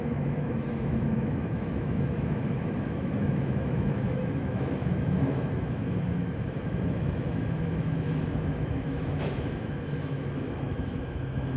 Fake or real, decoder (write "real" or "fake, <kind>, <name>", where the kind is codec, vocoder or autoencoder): fake, autoencoder, DAC-VAE